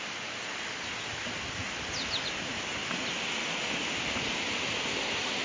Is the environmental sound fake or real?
real